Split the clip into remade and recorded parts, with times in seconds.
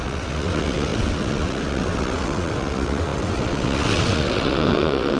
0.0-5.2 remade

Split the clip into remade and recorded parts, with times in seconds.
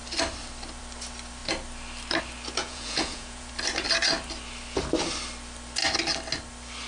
0.0-2.6 recorded; 2.6-3.5 remade; 3.5-6.9 recorded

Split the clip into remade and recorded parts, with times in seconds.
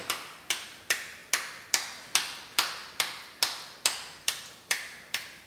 0.0-1.2 remade; 1.2-4.1 recorded; 4.1-5.5 remade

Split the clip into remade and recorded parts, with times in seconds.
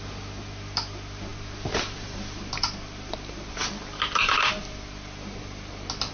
0.0-6.1 recorded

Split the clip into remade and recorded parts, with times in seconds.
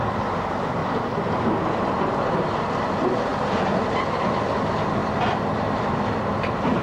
0.0-0.8 remade; 0.8-1.7 recorded; 1.7-3.3 remade; 3.3-4.5 recorded; 4.5-5.0 remade; 5.0-5.7 recorded; 5.7-6.8 remade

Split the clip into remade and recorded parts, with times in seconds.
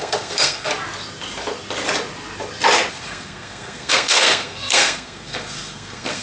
0.0-0.7 remade; 0.7-2.9 recorded; 2.9-6.2 remade